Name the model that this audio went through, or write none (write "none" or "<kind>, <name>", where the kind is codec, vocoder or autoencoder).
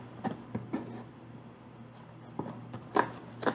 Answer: none